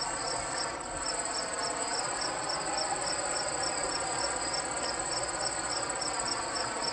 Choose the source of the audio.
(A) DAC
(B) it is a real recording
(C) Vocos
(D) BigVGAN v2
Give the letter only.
B